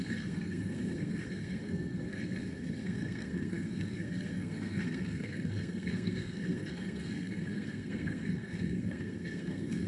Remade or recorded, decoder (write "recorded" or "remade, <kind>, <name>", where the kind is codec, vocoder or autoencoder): remade, codec, SNAC